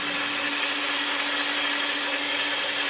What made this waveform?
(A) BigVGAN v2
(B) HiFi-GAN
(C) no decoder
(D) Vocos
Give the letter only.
C